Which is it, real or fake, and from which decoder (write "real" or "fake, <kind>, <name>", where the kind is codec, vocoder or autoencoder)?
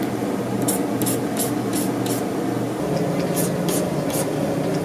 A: real